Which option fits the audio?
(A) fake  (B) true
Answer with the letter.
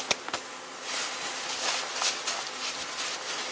B